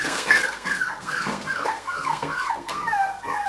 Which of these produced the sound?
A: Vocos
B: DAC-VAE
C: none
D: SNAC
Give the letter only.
D